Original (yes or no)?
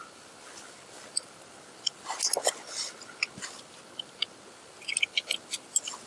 yes